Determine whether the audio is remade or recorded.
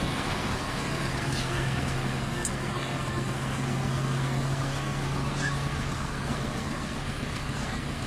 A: remade